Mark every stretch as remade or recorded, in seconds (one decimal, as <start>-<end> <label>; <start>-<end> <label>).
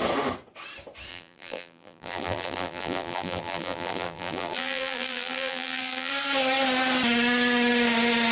0.0-1.1 recorded; 1.1-6.1 remade; 6.1-8.3 recorded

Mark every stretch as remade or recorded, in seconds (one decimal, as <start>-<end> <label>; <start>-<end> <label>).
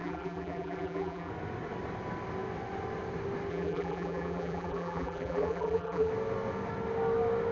0.0-1.3 remade; 1.3-3.5 recorded; 3.5-6.1 remade; 6.1-7.5 recorded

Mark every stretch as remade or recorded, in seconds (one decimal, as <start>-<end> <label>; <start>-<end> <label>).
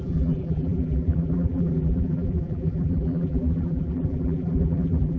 0.0-5.2 remade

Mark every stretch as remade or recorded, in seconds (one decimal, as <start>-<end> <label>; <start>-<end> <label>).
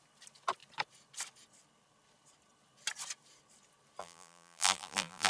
0.0-4.0 recorded; 4.0-5.3 remade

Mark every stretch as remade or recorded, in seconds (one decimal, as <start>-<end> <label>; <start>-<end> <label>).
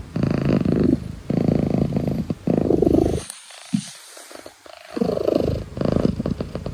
0.0-2.8 recorded; 2.8-4.2 remade; 4.2-5.7 recorded; 5.7-6.7 remade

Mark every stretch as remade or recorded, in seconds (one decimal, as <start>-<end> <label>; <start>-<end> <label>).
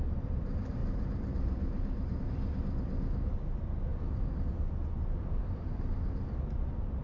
0.0-0.8 recorded; 0.8-2.2 remade; 2.2-7.0 recorded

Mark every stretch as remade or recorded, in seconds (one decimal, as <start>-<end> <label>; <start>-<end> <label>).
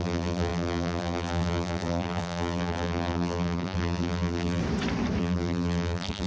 0.0-4.6 remade; 4.6-5.2 recorded; 5.2-6.3 remade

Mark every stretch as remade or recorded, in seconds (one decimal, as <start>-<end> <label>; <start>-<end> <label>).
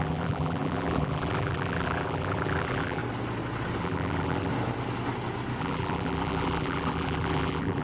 0.0-3.0 remade; 3.0-3.8 recorded; 3.8-4.5 remade; 4.5-5.6 recorded; 5.6-7.8 remade